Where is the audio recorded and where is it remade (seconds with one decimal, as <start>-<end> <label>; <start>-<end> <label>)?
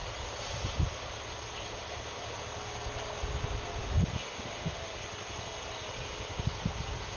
0.0-3.8 recorded; 3.8-4.8 remade; 4.8-7.2 recorded